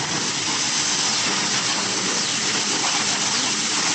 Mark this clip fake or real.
real